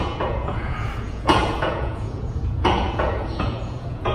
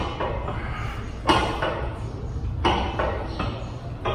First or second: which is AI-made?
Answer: first